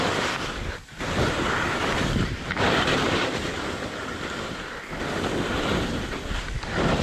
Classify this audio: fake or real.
real